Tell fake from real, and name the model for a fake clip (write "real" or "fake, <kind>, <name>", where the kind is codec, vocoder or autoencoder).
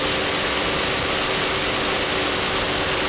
real